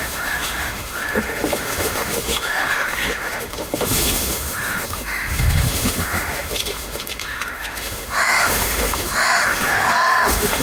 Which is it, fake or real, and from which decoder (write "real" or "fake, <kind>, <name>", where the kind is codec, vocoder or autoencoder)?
fake, autoencoder, DAC-VAE